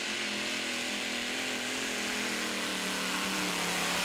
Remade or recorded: recorded